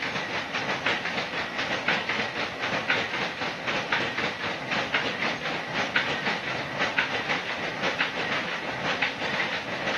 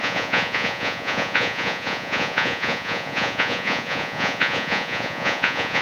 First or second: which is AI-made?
second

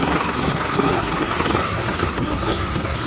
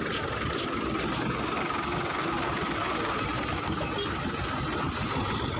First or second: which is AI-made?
first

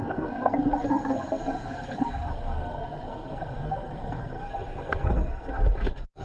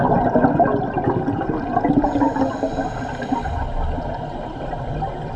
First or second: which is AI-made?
first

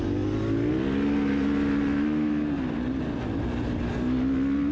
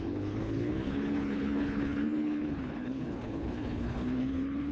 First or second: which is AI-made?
second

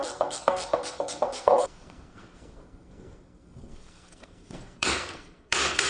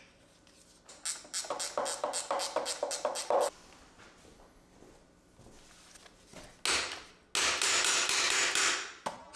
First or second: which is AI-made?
first